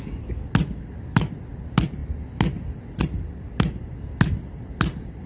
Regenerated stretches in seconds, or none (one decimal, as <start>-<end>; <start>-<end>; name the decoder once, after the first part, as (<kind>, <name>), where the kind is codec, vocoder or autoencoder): none